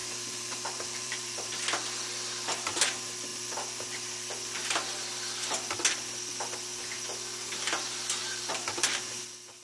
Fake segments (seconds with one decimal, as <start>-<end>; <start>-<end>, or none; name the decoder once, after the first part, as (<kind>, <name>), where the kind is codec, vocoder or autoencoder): 0.0-1.5 (vocoder, BigVGAN v2); 8.2-9.2